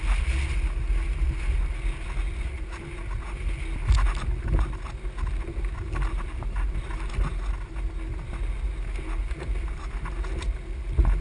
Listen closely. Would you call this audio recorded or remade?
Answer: recorded